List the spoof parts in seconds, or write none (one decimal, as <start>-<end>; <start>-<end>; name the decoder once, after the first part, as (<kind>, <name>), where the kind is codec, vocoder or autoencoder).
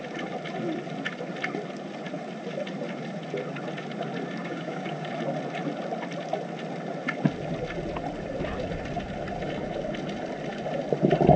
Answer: 4.4-5.1 (codec, DAC)